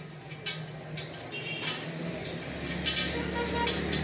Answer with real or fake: real